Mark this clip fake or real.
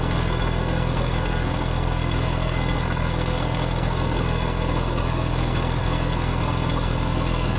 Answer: fake